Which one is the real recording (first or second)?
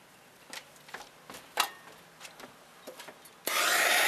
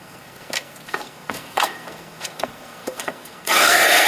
first